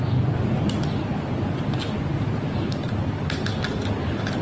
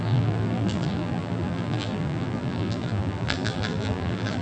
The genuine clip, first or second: first